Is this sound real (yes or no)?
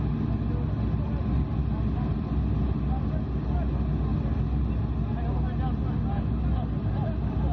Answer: yes